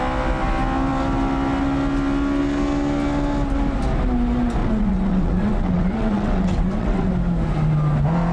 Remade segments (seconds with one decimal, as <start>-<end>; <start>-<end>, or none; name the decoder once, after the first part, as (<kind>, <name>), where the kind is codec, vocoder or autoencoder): 4.6-7.1 (vocoder, WaveNeXt)